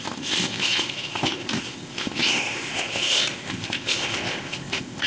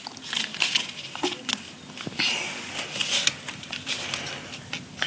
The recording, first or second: second